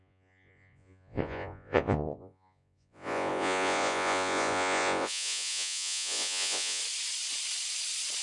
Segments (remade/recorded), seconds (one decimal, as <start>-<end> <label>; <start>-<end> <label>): 0.0-6.8 remade; 6.8-8.2 recorded